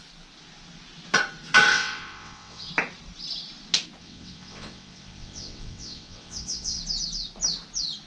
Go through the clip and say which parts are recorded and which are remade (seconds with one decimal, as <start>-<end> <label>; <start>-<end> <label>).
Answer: 0.0-1.7 recorded; 1.7-2.7 remade; 2.7-4.0 recorded; 4.0-6.8 remade; 6.8-8.1 recorded

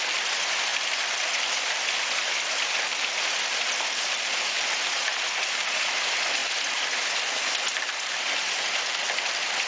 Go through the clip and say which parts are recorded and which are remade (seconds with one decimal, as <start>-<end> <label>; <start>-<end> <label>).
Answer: 0.0-9.7 recorded